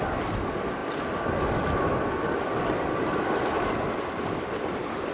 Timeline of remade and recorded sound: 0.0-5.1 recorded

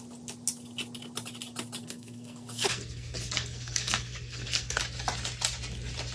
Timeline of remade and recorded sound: 0.0-1.8 recorded; 1.8-4.8 remade; 4.8-6.1 recorded

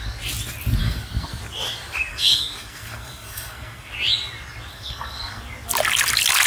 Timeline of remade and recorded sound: 0.0-0.8 recorded; 0.8-1.4 remade; 1.4-2.1 recorded; 2.1-3.9 remade; 3.9-4.7 recorded; 4.7-5.4 remade; 5.4-6.5 recorded